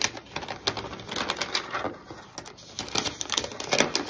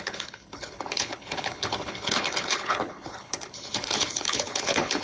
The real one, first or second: first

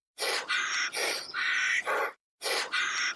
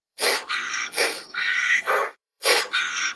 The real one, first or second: first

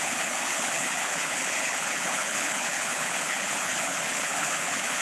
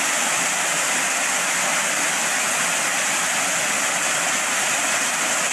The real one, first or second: second